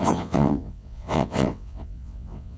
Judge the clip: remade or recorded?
remade